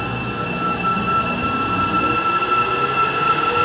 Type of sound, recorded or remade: recorded